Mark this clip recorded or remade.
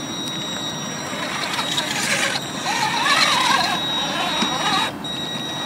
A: recorded